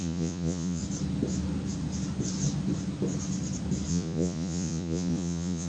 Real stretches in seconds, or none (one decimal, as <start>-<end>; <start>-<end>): 0.8-3.9